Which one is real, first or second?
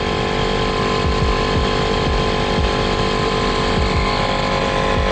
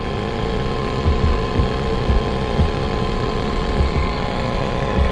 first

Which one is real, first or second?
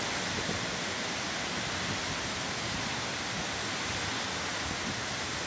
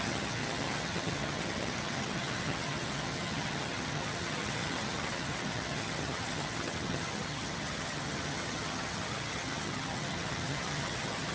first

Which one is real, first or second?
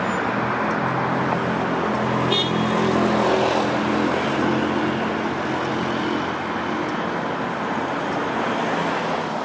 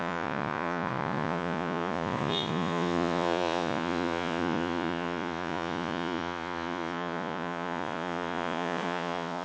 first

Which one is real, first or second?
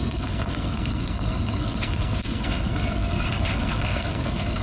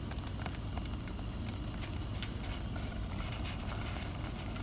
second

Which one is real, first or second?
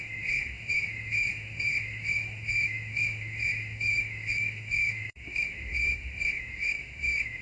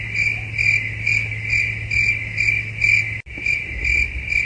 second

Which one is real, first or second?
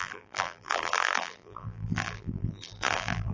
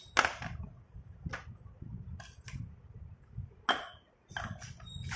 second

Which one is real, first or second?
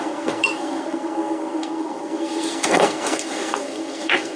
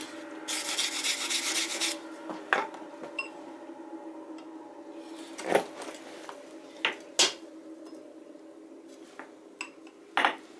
second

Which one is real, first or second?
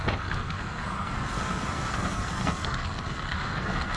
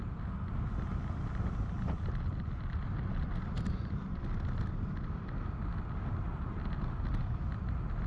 second